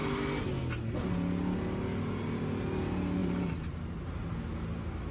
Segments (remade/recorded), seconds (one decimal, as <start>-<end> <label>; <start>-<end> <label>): 0.0-3.2 recorded; 3.2-4.3 remade; 4.3-5.1 recorded